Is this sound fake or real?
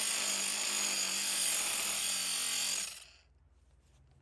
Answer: real